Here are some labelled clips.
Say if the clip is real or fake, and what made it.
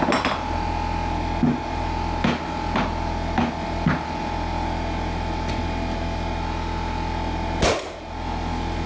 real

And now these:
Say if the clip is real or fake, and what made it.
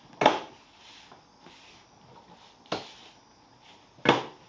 real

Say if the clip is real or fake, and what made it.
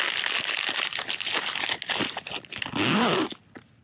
real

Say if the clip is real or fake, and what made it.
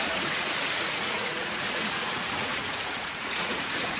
fake, vocoder, Vocos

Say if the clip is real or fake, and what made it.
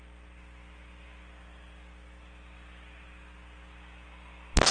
real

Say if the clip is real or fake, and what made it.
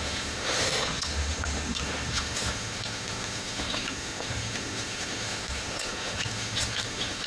fake, autoencoder, DAC-VAE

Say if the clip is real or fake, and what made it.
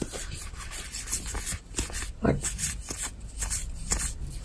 real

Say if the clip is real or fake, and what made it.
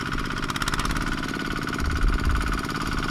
real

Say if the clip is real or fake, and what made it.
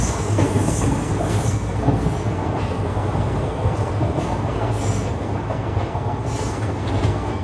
fake, codec, SNAC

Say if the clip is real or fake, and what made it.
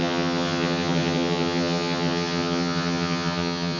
fake, vocoder, HiFi-GAN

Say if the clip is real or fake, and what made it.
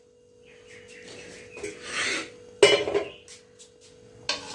real